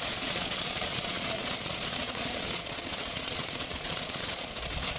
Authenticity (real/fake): fake